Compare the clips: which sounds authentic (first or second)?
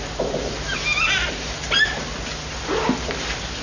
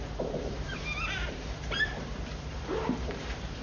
first